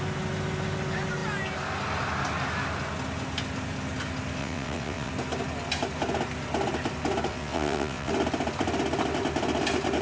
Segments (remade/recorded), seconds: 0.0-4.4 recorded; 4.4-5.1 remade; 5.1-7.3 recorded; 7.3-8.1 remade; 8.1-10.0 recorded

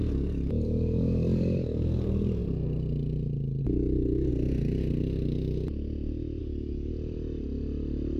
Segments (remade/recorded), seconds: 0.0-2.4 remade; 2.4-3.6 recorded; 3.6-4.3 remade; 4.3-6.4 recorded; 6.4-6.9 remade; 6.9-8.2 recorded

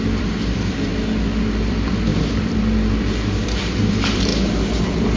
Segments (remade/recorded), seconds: 0.0-0.9 remade; 0.9-1.7 recorded; 1.7-4.3 remade; 4.3-4.8 recorded; 4.8-5.2 remade

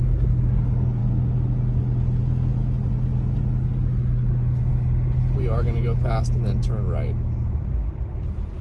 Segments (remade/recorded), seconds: 0.0-8.6 recorded